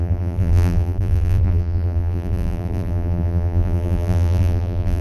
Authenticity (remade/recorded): remade